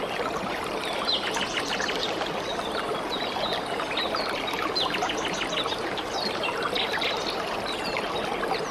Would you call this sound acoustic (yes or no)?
no